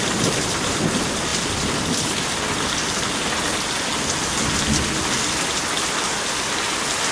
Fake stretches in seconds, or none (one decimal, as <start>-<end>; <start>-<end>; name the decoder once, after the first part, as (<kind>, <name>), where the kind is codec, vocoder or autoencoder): none